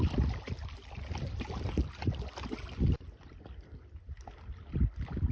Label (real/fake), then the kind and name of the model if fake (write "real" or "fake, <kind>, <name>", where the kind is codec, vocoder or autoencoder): real